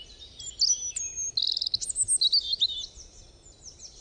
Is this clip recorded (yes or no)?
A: yes